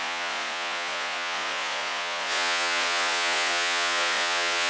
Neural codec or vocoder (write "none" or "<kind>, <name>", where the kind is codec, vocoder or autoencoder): vocoder, Vocos